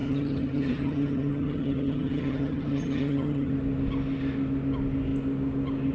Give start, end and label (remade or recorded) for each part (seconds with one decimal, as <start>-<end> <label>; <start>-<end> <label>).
0.0-3.5 remade; 3.5-5.9 recorded